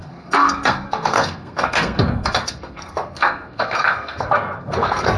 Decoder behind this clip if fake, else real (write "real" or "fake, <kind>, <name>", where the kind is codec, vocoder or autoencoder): fake, codec, SNAC